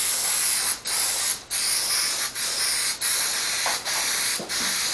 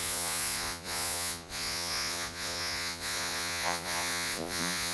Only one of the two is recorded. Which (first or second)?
first